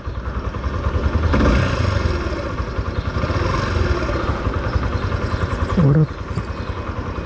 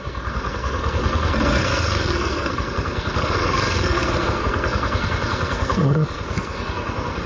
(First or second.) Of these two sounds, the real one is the first